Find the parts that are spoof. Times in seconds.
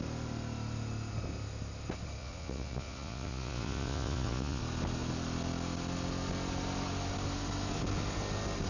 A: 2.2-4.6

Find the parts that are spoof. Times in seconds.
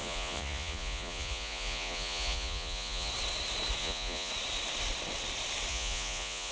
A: 0.0-3.1; 3.8-4.3; 5.7-6.5